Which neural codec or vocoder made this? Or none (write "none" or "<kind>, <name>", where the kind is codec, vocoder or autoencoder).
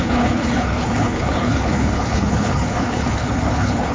codec, HILCodec